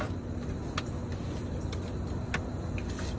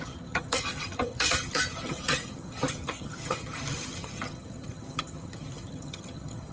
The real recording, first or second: first